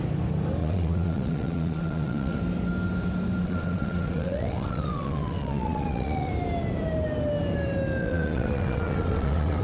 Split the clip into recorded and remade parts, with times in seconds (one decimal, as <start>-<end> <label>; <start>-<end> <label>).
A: 0.0-0.6 recorded; 0.6-2.4 remade; 2.4-3.4 recorded; 3.4-6.3 remade; 6.3-8.0 recorded; 8.0-9.6 remade